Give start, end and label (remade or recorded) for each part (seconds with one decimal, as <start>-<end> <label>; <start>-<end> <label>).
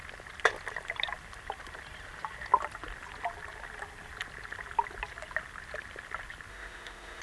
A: 0.0-6.5 recorded; 6.5-7.2 remade